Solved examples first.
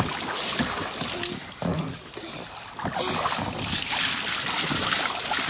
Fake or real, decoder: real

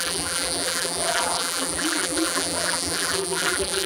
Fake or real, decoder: fake, vocoder, BigVGAN v2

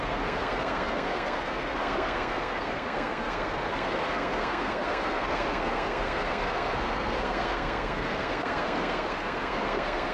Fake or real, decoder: fake, codec, SNAC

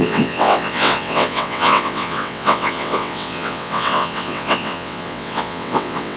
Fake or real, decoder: fake, vocoder, WaveNeXt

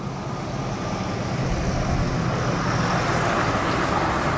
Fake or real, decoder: real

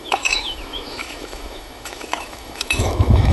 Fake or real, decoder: fake, autoencoder, DAC-VAE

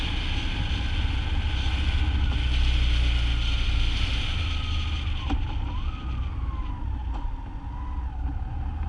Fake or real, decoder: real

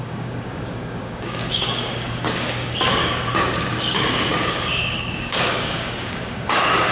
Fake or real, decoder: fake, codec, DAC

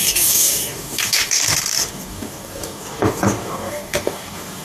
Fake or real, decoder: fake, codec, DAC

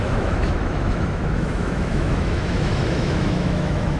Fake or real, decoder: fake, autoencoder, DAC-VAE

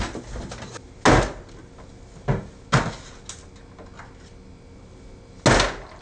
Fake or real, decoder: real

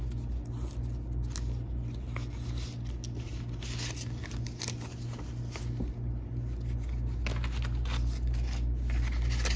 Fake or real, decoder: real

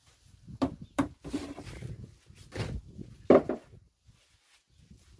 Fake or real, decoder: real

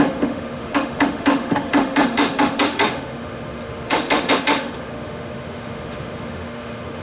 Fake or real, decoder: fake, autoencoder, DAC-VAE